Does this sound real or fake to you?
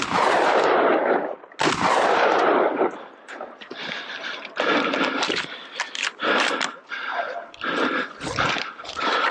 real